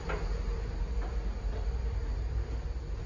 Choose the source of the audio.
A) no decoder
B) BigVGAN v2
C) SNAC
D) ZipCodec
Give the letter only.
A